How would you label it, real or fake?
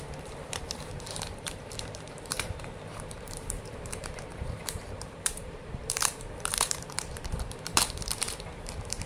fake